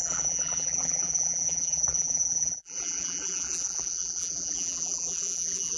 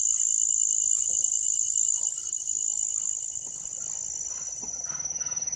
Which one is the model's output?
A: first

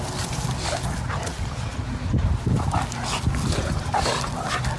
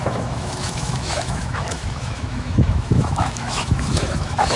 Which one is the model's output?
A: second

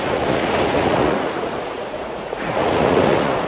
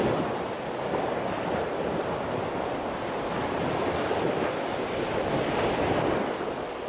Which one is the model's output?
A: first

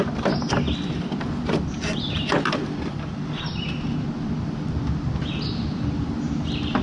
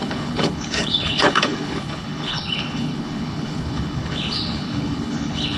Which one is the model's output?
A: second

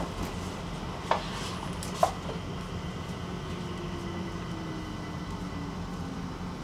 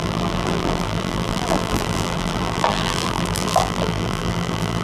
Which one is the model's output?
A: second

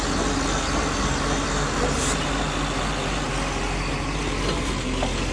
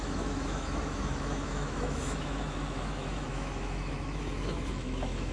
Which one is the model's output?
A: second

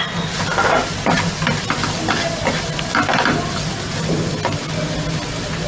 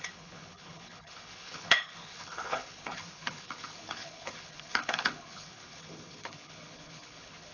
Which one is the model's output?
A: second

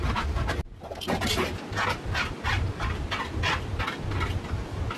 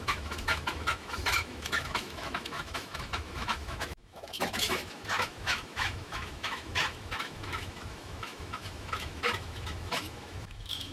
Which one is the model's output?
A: second